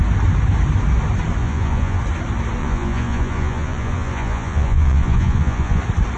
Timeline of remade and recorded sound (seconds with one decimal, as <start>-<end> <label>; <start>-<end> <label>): 0.0-1.4 recorded; 1.4-2.0 remade; 2.0-2.6 recorded; 2.6-5.8 remade; 5.8-6.2 recorded